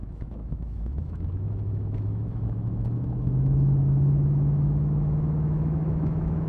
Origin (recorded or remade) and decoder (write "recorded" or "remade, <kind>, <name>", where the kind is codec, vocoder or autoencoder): remade, autoencoder, DAC-VAE